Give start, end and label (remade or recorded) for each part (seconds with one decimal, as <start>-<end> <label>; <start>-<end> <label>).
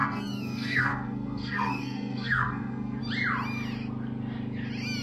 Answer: 0.0-3.0 remade; 3.0-5.0 recorded